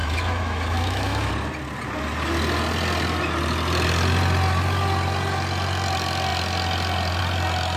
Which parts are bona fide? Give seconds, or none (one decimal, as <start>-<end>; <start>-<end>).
1.3-7.8